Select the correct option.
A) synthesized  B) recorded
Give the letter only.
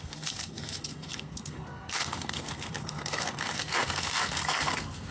A